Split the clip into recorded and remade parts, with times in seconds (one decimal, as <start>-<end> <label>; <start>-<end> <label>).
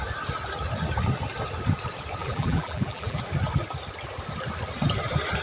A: 0.0-2.2 recorded; 2.2-3.2 remade; 3.2-5.4 recorded